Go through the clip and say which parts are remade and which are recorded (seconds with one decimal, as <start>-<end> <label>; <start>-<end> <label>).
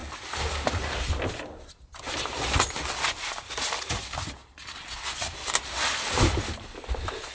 0.0-7.3 recorded